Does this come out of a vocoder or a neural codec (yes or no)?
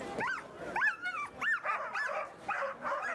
no